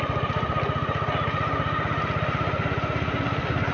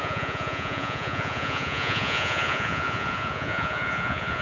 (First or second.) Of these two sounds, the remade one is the second